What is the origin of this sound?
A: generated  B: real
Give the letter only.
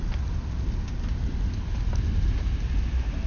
B